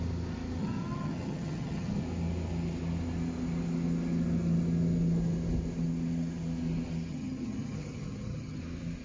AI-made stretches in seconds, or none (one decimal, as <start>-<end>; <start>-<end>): 0.6-2.0; 7.1-8.6